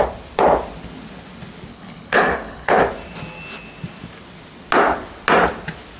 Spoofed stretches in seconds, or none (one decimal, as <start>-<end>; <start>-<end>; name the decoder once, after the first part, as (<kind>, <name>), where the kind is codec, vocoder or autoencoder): 1.7-2.8 (codec, HILCodec)